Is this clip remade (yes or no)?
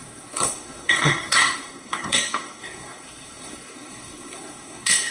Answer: yes